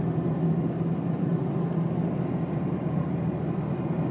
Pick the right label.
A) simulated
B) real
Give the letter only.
B